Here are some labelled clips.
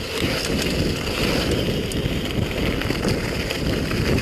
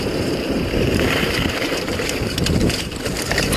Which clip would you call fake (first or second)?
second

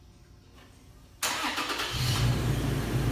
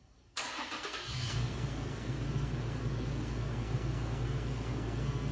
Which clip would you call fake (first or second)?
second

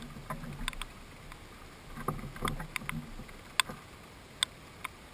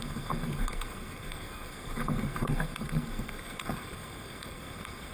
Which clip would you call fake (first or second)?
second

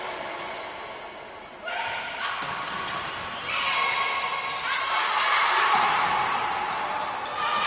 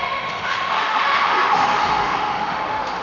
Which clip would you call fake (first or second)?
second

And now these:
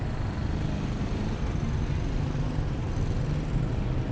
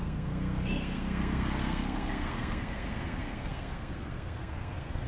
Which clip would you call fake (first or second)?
second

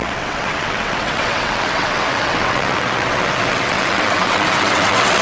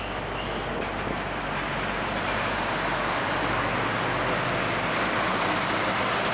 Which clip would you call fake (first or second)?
first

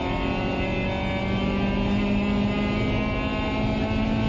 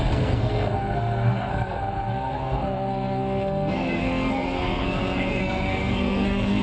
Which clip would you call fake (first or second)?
second